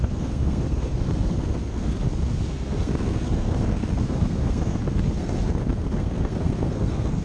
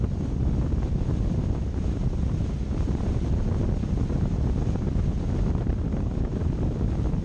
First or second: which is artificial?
first